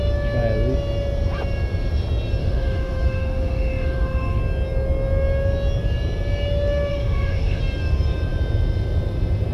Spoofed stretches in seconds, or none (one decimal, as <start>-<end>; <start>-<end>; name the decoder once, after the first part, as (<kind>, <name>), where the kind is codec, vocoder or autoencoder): 2.4-4.4 (autoencoder, DAC-VAE); 6.9-7.6